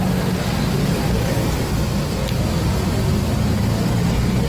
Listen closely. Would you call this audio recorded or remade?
recorded